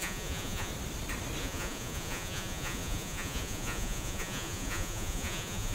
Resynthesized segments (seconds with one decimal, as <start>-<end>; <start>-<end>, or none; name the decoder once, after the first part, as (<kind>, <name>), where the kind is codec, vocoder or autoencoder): 0.0-0.7 (vocoder, Vocos); 1.4-5.7